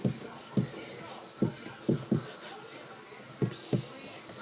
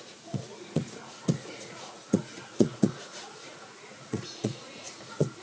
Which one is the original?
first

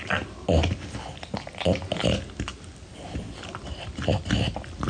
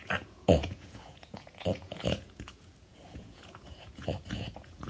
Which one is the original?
first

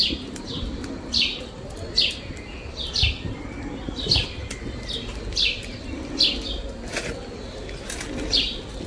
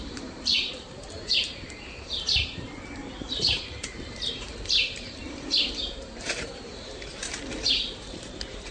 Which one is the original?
first